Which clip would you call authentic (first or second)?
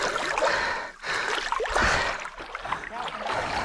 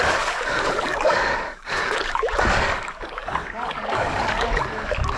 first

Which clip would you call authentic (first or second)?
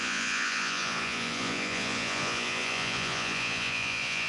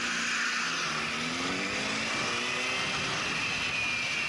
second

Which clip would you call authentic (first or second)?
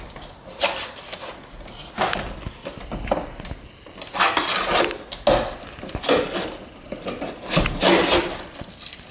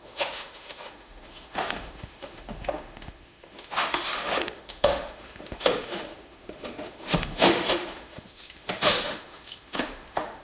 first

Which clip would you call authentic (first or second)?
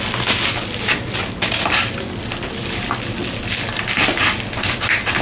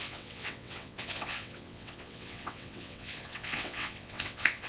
first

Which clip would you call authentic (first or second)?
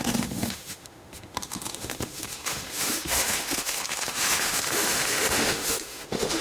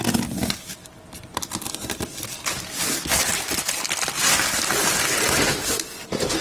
second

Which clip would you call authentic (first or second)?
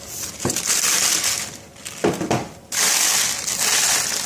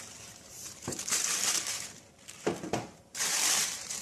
first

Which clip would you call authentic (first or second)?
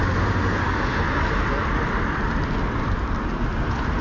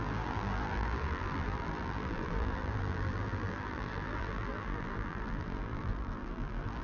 first